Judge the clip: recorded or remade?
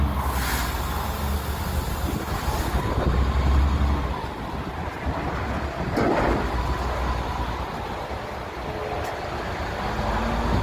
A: recorded